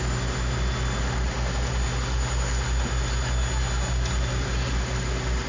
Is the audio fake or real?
real